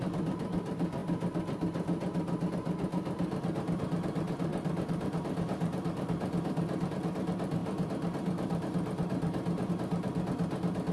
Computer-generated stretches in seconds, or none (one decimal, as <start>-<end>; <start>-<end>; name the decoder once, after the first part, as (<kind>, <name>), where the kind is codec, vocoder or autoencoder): 0.0-1.0 (vocoder, BigVGAN v2); 2.5-10.9

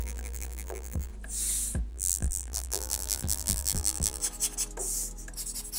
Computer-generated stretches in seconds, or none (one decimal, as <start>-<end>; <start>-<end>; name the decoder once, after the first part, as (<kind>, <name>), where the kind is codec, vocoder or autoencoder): 0.0-1.1 (vocoder, BigVGAN v2); 1.9-4.2

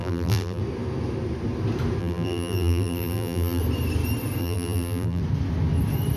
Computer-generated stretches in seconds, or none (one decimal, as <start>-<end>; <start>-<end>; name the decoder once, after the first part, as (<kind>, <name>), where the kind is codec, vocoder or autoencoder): 0.0-0.6 (vocoder, BigVGAN v2); 2.0-3.6; 4.4-5.2

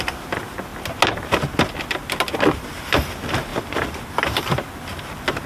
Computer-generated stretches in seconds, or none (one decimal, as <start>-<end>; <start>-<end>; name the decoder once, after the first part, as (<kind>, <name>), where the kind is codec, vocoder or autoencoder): none

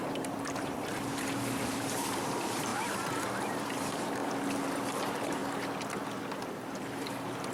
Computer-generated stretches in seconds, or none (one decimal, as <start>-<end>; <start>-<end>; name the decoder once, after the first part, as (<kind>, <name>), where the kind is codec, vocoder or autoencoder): 0.0-4.2 (vocoder, BigVGAN v2); 5.0-5.4; 6.4-7.5